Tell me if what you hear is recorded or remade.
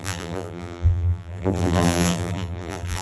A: remade